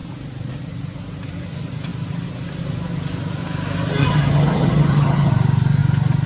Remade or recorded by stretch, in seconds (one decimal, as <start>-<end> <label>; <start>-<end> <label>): 0.0-4.0 recorded; 4.0-5.3 remade; 5.3-6.3 recorded